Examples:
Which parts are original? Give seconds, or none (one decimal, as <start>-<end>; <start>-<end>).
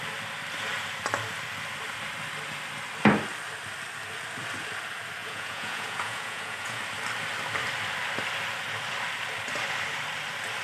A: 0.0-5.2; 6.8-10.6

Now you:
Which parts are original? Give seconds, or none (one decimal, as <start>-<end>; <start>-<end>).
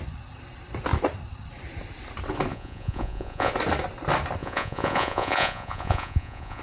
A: 0.0-2.5; 3.5-4.4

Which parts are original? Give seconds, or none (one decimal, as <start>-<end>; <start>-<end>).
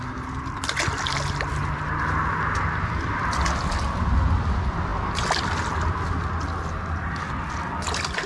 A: 0.0-8.3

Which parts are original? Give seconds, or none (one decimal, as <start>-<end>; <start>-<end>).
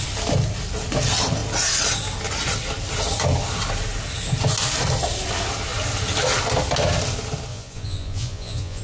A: 0.0-7.5